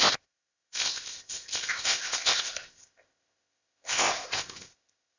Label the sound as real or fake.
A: fake